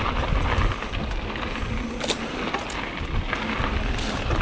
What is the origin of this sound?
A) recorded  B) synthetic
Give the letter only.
A